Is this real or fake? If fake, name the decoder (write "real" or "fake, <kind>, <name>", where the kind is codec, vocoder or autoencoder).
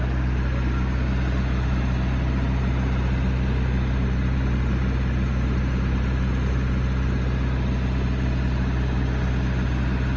real